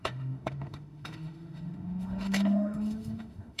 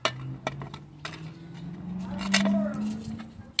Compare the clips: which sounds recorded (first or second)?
second